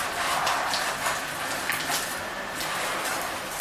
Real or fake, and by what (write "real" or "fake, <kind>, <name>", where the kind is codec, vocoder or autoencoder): real